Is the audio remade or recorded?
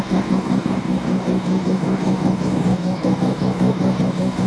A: remade